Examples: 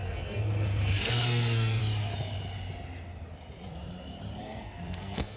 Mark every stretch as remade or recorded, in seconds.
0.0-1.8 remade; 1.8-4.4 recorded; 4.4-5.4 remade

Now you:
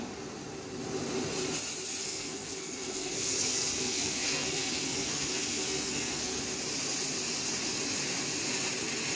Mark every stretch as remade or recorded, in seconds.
0.0-2.0 recorded; 2.0-6.4 remade; 6.4-9.2 recorded

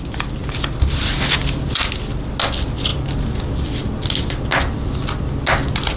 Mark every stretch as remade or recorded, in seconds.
0.0-6.0 recorded

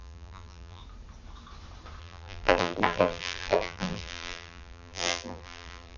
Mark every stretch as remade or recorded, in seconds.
0.0-0.8 remade; 0.8-2.0 recorded; 2.0-6.0 remade